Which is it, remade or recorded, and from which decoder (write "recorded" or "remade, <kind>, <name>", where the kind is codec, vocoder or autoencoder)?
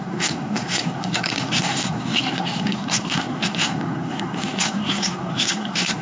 remade, codec, SNAC